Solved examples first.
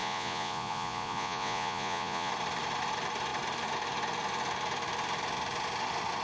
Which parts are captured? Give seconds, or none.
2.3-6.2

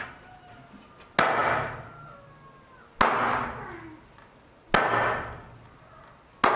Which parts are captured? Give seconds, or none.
0.0-6.6

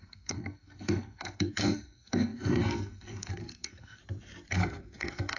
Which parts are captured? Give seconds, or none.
4.0-4.5

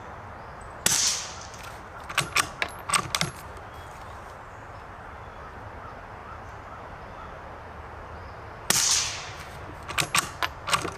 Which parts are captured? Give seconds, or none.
0.0-11.0

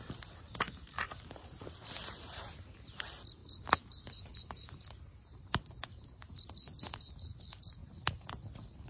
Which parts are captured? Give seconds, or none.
0.0-0.5; 1.6-3.4; 7.1-7.8; 8.3-8.9

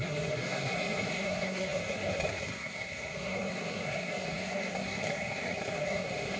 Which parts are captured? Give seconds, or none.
none